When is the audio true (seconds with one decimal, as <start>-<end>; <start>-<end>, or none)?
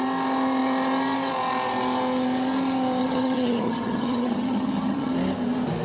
0.0-3.0; 5.1-5.8